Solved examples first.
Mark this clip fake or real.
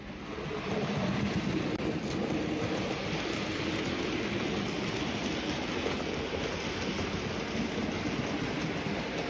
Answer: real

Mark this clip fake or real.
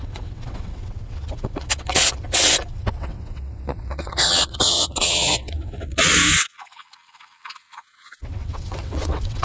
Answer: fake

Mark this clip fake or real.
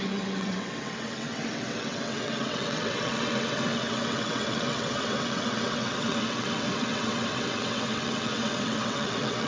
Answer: fake